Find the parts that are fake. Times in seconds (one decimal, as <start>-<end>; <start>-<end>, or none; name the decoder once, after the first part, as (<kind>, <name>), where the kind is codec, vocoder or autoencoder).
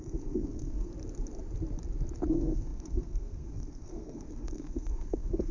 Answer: 0.0-0.9 (codec, SNAC); 2.3-5.5